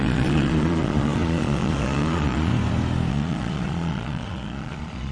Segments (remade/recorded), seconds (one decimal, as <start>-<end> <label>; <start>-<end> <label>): 0.0-2.5 remade; 2.5-3.1 recorded; 3.1-5.1 remade